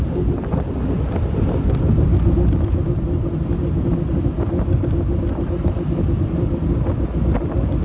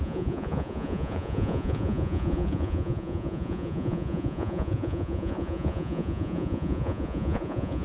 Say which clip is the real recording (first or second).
first